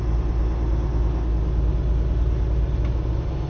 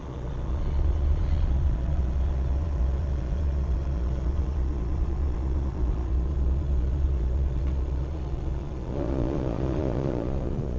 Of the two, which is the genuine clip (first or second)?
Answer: first